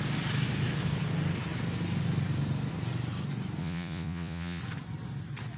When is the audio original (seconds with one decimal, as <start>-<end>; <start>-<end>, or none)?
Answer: 0.0-3.6; 4.6-5.6